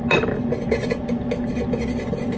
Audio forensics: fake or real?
real